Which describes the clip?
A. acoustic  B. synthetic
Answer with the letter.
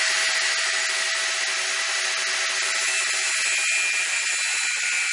A